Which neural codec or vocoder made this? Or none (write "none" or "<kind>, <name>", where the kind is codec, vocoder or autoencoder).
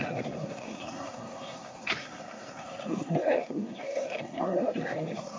codec, SNAC